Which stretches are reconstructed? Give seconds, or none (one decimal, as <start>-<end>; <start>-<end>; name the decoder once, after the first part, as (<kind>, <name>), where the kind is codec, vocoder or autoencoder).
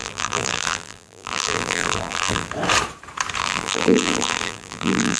0.0-2.5 (vocoder, BigVGAN v2); 3.4-5.2